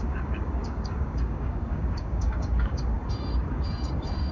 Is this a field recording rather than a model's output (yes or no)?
no